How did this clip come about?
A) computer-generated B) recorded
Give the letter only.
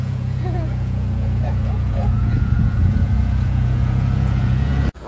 A